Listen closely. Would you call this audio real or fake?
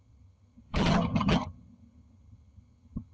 fake